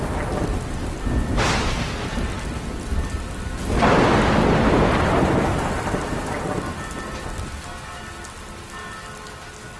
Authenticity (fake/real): real